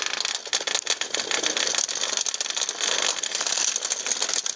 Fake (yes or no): no